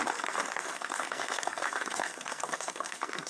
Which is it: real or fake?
fake